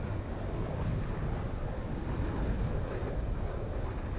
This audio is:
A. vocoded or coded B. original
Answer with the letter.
B